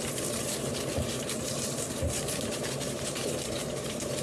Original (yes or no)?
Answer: no